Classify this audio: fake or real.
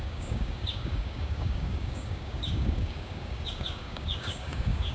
fake